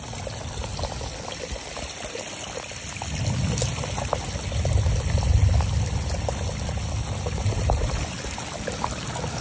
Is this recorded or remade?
recorded